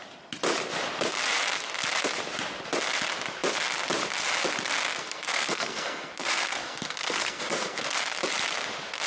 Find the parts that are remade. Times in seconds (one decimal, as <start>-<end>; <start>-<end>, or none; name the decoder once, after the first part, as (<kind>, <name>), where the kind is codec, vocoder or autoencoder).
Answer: 5.0-8.0 (codec, SNAC)